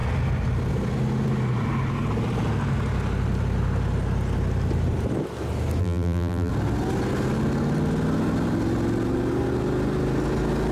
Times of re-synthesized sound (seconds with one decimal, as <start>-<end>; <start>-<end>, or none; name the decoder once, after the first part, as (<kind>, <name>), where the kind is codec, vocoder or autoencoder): 5.8-6.5 (vocoder, BigVGAN v2)

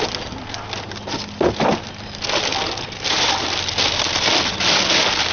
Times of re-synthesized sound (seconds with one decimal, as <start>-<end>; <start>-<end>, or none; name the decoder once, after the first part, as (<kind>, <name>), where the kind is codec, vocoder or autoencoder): none

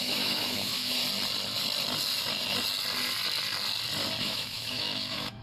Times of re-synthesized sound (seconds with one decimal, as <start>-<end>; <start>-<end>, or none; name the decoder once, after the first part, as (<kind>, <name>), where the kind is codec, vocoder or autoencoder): 0.0-1.0 (autoencoder, DAC-VAE); 4.2-5.4

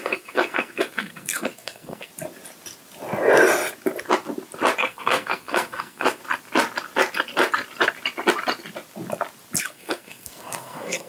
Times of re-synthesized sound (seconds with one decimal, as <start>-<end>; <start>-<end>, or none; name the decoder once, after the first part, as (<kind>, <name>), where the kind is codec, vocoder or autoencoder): 0.0-2.1 (codec, SNAC); 4.8-6.2; 9.6-11.1

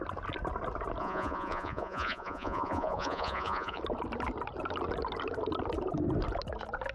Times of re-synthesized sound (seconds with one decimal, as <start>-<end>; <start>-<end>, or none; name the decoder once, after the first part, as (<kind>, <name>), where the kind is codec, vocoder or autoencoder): 1.0-3.8 (vocoder, Vocos)

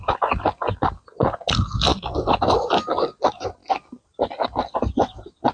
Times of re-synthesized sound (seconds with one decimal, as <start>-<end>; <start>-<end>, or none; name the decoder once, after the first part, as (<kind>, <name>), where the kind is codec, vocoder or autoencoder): none

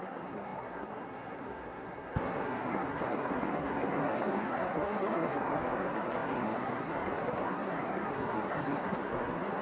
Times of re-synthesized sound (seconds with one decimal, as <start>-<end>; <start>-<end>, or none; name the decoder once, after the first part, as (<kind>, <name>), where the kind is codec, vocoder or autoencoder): 0.0-9.6 (codec, SNAC)